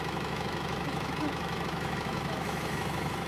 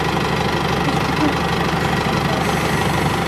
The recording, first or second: second